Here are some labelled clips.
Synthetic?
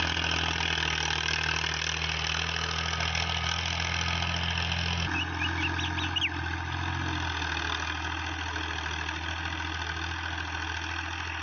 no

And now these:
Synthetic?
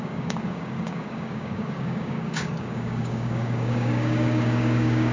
yes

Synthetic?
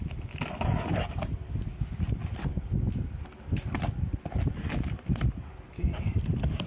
no